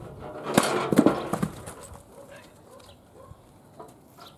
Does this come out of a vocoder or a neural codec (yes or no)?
no